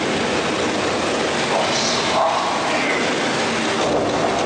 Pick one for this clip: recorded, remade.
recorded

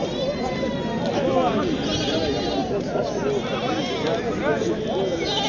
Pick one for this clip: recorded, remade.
recorded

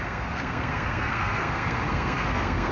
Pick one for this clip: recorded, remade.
remade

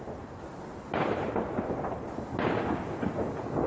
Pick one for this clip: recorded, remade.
recorded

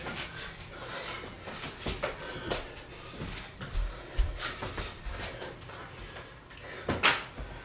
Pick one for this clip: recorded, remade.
recorded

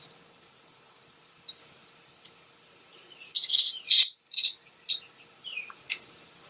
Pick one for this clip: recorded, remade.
recorded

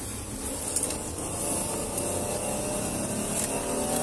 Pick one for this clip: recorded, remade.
recorded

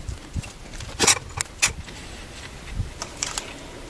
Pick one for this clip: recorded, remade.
recorded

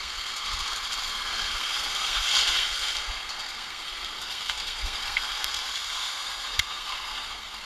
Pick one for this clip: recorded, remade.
remade